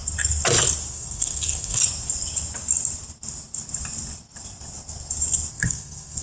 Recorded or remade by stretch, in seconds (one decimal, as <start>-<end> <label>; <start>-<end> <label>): 0.0-0.9 recorded; 0.9-1.8 remade; 1.8-5.5 recorded; 5.5-6.2 remade